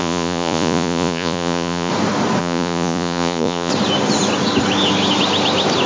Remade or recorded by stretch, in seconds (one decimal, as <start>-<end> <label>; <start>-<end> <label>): 0.0-1.9 remade; 1.9-2.4 recorded; 2.4-3.7 remade; 3.7-5.9 recorded